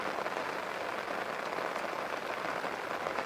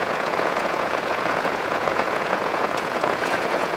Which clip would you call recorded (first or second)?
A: first